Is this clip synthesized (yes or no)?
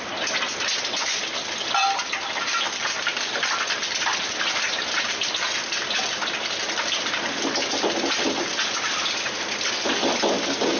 no